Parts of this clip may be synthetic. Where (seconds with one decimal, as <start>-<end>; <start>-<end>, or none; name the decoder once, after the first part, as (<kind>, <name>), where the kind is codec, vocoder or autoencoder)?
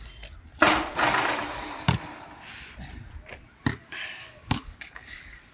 4.2-5.5 (codec, DAC)